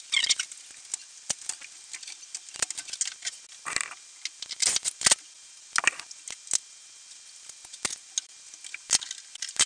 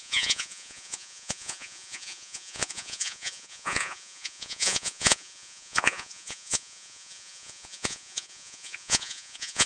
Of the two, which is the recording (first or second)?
first